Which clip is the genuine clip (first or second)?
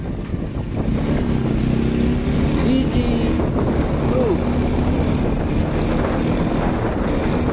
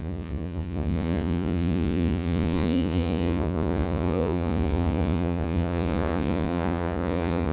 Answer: first